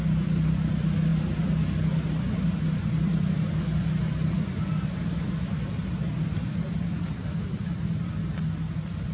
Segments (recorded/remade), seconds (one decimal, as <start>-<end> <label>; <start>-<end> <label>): 0.0-9.1 recorded